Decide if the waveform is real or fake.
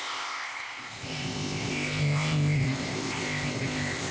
fake